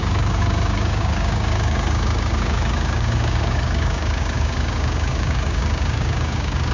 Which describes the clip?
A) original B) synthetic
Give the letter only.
B